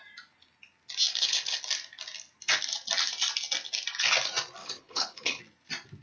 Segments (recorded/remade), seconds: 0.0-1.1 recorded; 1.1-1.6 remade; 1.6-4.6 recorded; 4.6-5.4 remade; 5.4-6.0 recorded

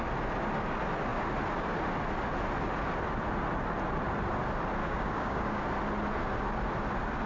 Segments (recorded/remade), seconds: 0.0-4.8 recorded; 4.8-5.6 remade; 5.6-7.3 recorded

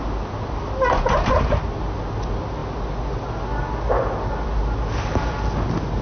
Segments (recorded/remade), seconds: 0.0-6.0 recorded

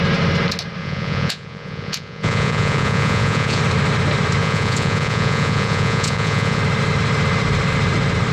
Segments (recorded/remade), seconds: 0.0-0.8 recorded; 0.8-3.6 remade; 3.6-4.4 recorded; 4.4-6.6 remade; 6.6-8.3 recorded

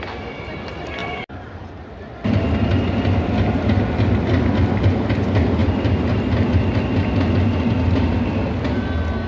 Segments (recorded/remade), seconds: 0.0-9.3 recorded

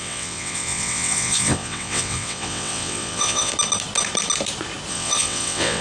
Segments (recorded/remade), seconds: 0.0-3.5 remade; 3.5-4.9 recorded; 4.9-5.8 remade

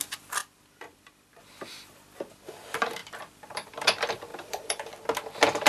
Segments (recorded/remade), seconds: 0.0-0.4 recorded; 0.4-1.4 remade; 1.4-3.0 recorded; 3.0-3.7 remade; 3.7-4.3 recorded; 4.3-4.9 remade; 4.9-5.7 recorded

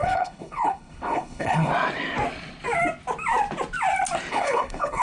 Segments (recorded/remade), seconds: 0.0-1.7 remade; 1.7-4.3 recorded; 4.3-5.0 remade